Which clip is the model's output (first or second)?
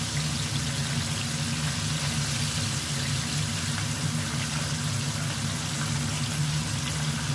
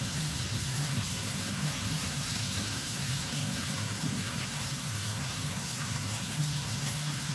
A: second